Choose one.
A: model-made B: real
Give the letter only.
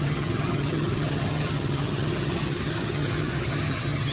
A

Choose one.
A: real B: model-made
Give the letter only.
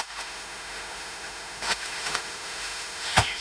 B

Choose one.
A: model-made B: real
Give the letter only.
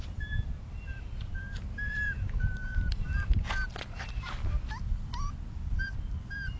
A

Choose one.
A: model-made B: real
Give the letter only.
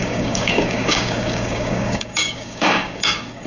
A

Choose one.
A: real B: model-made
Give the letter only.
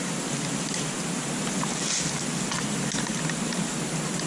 A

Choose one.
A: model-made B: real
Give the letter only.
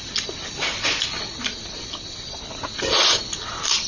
B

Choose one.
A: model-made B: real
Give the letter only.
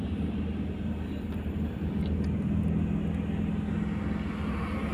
B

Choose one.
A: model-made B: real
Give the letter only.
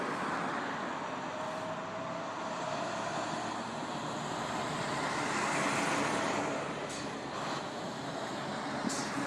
B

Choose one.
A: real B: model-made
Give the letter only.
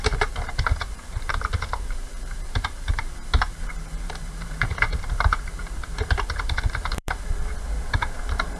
B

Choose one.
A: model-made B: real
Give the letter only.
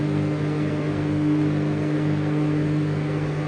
A